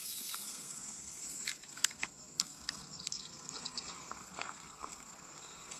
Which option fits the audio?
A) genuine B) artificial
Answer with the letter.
B